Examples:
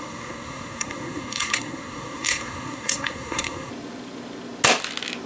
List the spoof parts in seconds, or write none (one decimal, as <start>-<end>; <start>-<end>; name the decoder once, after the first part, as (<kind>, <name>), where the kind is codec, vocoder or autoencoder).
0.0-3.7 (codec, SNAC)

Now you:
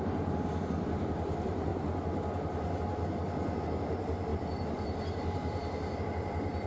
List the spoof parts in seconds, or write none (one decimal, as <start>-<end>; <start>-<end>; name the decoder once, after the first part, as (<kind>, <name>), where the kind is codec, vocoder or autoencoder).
0.0-1.7 (vocoder, BigVGAN v2); 3.6-6.7

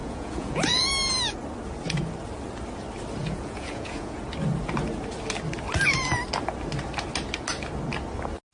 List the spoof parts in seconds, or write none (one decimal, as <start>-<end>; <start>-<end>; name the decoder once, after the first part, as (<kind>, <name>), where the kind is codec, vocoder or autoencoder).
0.0-0.9 (vocoder, Vocos); 3.2-4.2

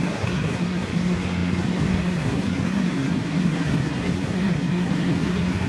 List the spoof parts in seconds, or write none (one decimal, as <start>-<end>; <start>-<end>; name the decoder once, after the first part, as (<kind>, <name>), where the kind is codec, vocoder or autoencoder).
0.0-5.7 (codec, SNAC)

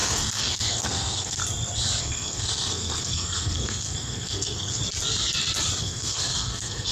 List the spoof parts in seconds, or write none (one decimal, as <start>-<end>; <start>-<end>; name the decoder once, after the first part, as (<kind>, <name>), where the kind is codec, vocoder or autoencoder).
0.0-1.4 (codec, SNAC); 2.0-4.8; 5.8-6.9